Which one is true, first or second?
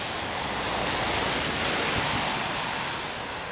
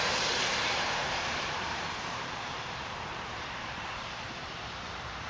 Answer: first